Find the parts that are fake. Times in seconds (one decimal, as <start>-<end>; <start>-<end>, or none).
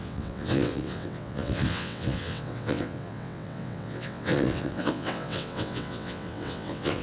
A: 0.0-7.0